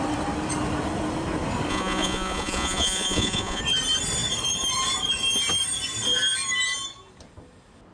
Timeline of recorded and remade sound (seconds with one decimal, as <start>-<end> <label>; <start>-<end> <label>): 0.0-1.7 recorded; 1.7-3.6 remade; 3.6-7.9 recorded